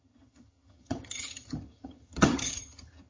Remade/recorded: remade